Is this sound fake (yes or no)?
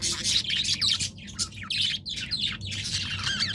no